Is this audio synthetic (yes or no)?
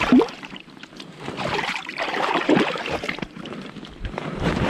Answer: yes